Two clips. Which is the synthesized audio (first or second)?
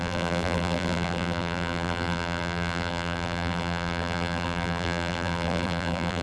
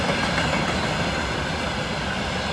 first